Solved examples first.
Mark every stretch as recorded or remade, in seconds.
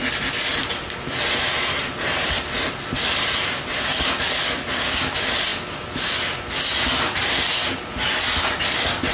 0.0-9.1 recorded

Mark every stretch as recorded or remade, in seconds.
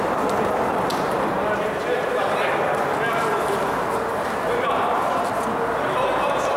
0.0-6.6 recorded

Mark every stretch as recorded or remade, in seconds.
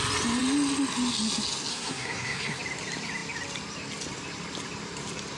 0.0-1.7 recorded; 1.7-2.6 remade; 2.6-5.4 recorded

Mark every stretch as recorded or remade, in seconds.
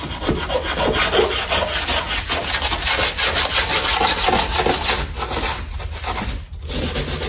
0.0-7.3 recorded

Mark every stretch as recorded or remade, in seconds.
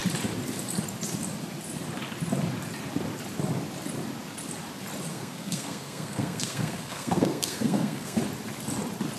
0.0-5.1 recorded; 5.1-8.2 remade; 8.2-9.2 recorded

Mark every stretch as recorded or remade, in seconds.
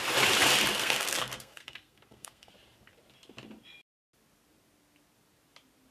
0.0-0.7 recorded; 0.7-2.5 remade; 2.5-5.9 recorded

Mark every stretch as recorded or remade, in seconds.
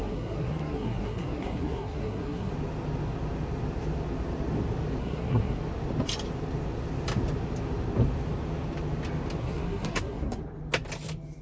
0.0-2.5 remade; 2.5-5.0 recorded; 5.0-5.6 remade; 5.6-9.4 recorded; 9.4-10.4 remade; 10.4-11.4 recorded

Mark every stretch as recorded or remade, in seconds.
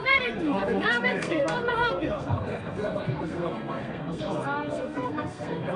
0.0-5.8 remade